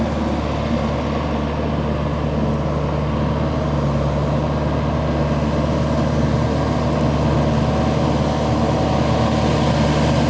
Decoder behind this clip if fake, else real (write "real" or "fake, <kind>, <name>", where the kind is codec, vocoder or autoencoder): real